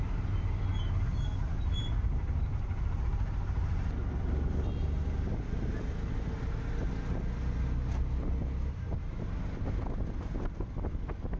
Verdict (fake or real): real